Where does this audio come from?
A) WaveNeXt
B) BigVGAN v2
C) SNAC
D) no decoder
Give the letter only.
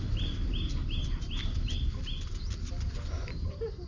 B